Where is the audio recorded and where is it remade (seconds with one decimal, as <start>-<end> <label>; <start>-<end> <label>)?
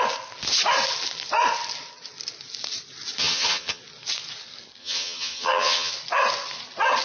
0.0-3.2 recorded; 3.2-3.8 remade; 3.8-4.8 recorded; 4.8-5.9 remade; 5.9-7.0 recorded